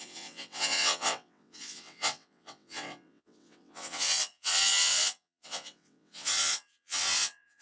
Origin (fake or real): fake